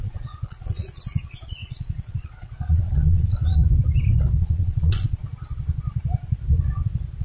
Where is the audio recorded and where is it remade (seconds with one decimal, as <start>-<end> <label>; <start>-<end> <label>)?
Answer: 0.0-3.6 remade; 3.6-4.4 recorded; 4.4-5.2 remade; 5.2-7.2 recorded